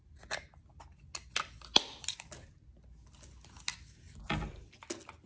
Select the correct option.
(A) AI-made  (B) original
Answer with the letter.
B